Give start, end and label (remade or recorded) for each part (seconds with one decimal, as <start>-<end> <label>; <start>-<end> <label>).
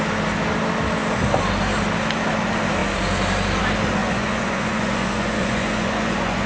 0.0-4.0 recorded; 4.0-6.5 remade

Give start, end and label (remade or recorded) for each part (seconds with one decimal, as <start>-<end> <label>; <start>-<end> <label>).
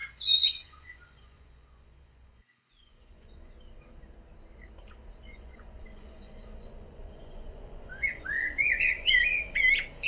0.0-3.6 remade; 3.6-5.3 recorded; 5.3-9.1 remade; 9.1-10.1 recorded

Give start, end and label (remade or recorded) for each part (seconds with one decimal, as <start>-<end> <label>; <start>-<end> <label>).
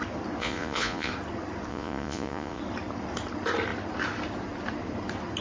0.0-0.4 recorded; 0.4-1.1 remade; 1.1-1.7 recorded; 1.7-2.6 remade; 2.6-5.4 recorded